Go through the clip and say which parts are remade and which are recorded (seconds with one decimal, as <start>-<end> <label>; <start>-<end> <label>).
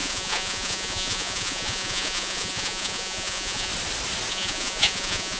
0.0-3.7 remade; 3.7-4.3 recorded; 4.3-5.4 remade